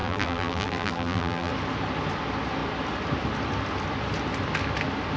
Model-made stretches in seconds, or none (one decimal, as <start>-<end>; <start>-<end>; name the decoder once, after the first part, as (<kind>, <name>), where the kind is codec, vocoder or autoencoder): 0.0-1.5 (vocoder, BigVGAN v2)